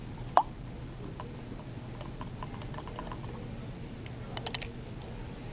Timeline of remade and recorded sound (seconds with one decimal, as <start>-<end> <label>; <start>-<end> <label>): 0.0-5.5 recorded